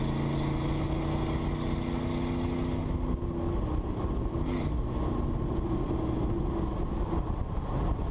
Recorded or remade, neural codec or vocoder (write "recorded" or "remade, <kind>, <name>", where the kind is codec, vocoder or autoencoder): recorded